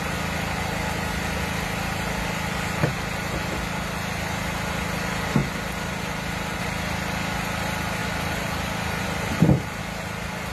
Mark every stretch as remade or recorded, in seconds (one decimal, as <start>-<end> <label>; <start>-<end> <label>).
0.0-10.5 recorded